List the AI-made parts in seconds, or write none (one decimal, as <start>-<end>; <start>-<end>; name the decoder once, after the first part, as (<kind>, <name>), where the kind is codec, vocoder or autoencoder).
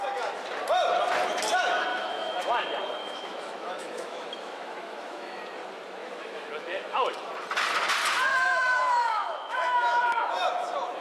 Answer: 1.9-2.4 (autoencoder, DAC-VAE); 3.0-5.4; 6.0-7.3; 8.3-10.3